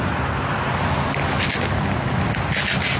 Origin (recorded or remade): recorded